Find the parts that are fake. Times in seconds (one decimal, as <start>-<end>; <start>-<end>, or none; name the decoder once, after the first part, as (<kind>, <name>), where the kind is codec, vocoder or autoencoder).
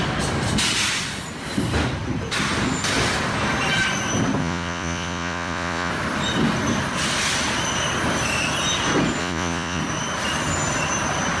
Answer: 4.4-5.9 (vocoder, Vocos); 9.2-9.8